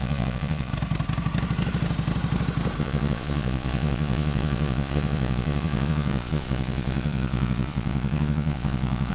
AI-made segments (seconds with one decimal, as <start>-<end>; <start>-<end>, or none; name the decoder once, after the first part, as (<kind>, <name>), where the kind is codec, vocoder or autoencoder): 0.0-0.7 (vocoder, Vocos); 2.8-9.1